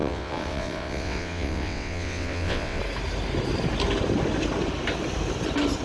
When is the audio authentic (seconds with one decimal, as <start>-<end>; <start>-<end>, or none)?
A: 2.8-5.8